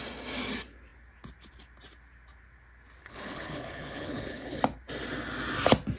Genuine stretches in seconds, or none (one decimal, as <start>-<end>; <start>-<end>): 0.0-3.0; 4.6-6.0